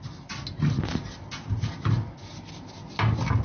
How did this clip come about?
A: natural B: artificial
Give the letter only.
A